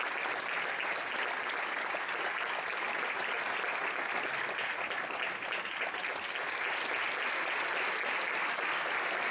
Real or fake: real